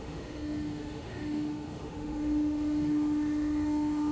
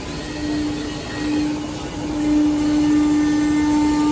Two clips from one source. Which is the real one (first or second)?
second